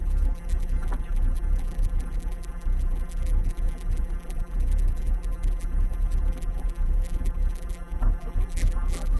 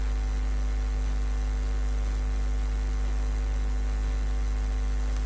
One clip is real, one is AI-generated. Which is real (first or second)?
second